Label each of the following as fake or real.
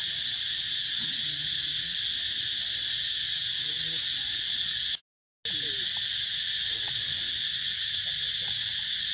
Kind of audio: real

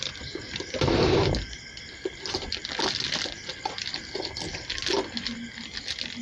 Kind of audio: real